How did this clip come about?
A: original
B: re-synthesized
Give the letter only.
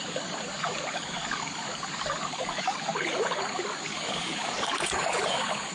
B